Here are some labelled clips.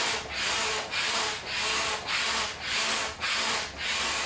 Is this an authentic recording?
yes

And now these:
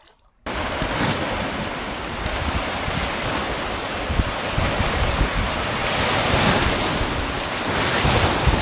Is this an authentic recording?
yes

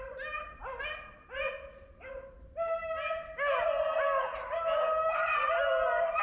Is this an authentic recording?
yes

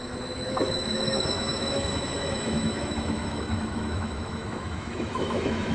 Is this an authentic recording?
no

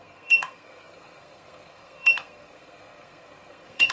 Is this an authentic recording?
no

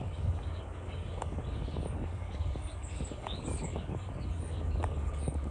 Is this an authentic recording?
no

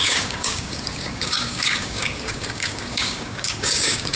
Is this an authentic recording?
no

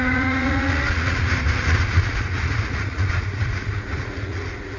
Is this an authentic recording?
no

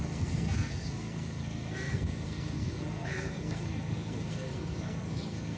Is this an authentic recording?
no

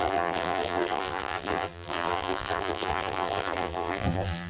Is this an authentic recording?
no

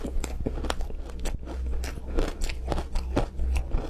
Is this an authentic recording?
yes